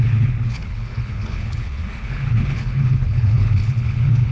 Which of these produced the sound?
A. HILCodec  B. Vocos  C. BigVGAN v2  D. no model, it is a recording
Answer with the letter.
A